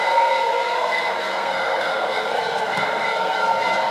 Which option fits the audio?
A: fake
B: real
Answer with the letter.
A